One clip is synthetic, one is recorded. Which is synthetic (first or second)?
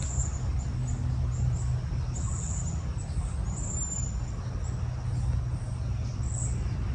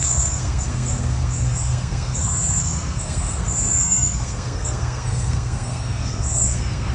second